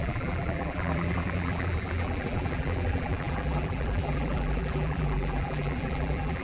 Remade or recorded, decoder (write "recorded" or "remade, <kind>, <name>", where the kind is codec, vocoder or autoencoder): remade, vocoder, BigVGAN v2